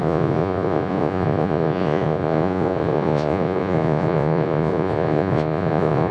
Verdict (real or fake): fake